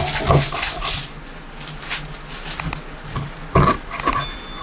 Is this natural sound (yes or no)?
yes